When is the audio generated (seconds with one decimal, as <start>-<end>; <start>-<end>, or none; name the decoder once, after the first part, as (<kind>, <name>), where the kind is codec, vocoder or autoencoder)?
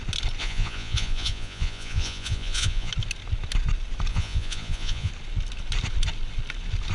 0.4-2.9 (vocoder, Vocos); 4.1-5.1